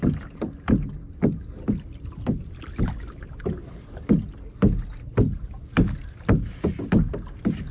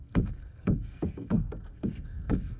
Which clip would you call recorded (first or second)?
first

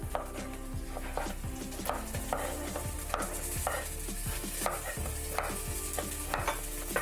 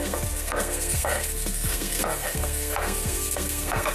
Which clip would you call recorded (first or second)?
first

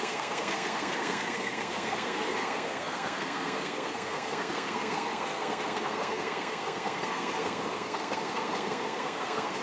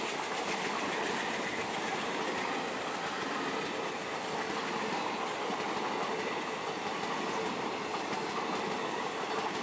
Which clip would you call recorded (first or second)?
second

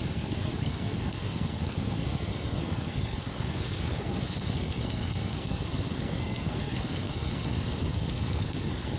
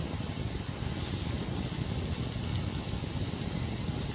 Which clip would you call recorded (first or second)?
second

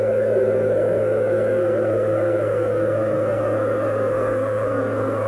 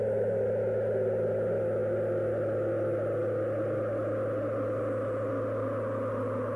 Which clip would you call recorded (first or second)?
second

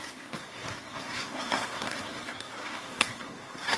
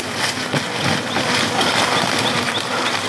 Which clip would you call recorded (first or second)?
second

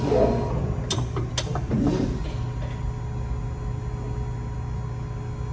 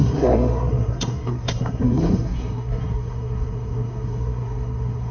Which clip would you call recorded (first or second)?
first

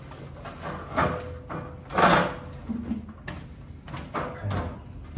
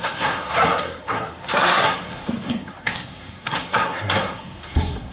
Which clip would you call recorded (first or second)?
first